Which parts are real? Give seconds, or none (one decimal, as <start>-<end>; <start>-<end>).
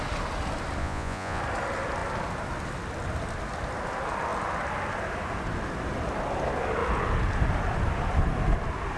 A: 0.0-0.8; 1.4-9.0